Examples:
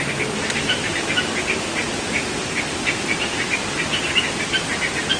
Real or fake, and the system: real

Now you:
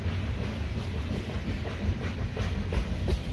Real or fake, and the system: real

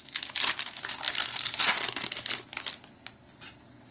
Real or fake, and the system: real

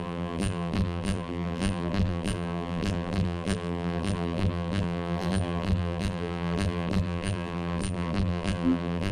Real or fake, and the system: fake, vocoder, BigVGAN v2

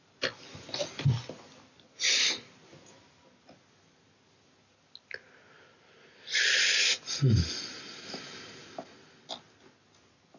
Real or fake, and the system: real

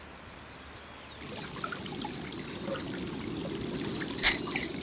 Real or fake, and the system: real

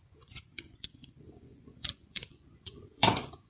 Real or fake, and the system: fake, vocoder, Vocos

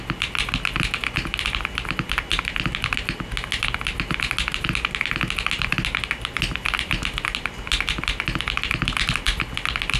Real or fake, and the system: real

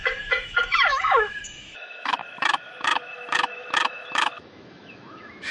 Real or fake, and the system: fake, autoencoder, DAC-VAE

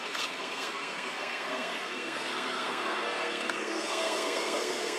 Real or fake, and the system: fake, codec, SNAC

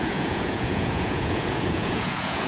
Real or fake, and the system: fake, vocoder, Vocos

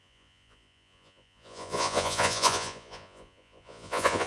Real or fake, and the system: fake, vocoder, Vocos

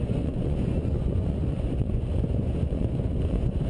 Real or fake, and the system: fake, vocoder, Vocos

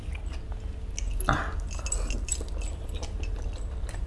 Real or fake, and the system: real